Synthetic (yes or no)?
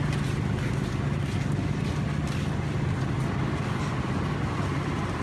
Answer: no